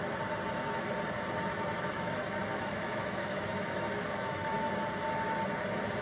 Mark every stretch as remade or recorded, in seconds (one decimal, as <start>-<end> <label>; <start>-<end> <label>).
0.0-1.5 recorded; 1.5-4.7 remade; 4.7-6.0 recorded